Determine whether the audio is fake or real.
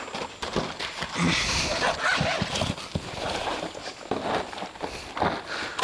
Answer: real